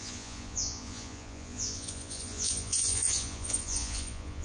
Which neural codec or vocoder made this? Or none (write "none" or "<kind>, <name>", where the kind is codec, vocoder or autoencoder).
vocoder, Vocos